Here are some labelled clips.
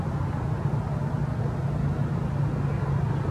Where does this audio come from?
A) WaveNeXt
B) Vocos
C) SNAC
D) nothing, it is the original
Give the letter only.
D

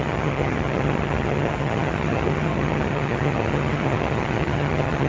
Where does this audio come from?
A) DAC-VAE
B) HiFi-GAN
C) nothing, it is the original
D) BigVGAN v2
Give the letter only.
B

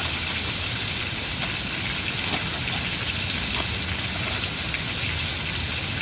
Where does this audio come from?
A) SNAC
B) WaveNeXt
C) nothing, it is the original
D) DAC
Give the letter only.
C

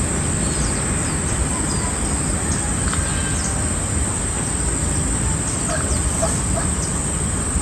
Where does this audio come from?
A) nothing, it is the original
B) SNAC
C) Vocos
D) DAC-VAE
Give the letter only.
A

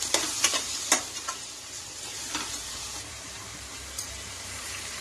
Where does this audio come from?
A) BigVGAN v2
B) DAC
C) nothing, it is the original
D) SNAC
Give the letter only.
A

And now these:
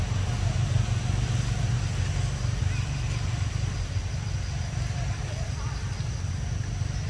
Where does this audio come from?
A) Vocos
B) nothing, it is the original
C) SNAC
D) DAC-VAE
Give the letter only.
B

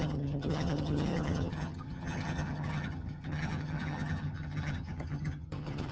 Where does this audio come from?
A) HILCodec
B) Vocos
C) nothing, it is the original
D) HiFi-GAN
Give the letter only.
D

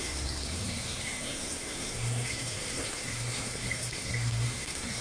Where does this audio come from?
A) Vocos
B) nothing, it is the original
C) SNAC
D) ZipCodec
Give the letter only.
C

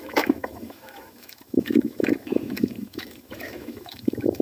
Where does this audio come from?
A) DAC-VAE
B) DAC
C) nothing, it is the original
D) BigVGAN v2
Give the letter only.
A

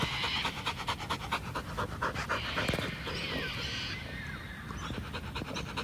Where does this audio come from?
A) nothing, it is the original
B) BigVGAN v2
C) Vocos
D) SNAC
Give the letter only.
B